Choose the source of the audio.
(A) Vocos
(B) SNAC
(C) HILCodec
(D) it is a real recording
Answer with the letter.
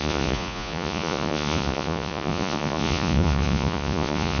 A